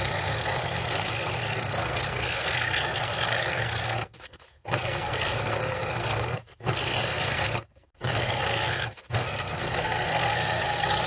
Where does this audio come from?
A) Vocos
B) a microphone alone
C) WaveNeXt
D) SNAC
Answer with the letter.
D